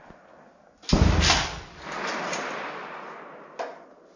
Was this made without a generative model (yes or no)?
yes